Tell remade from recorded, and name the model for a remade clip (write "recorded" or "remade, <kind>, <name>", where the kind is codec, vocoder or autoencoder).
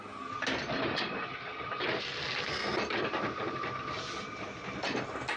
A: recorded